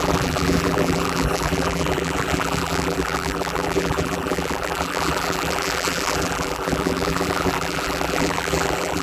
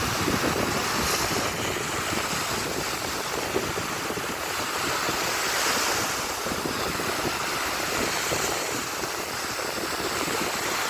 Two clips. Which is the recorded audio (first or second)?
second